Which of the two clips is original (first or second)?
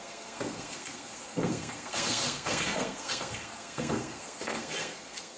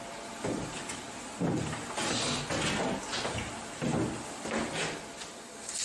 second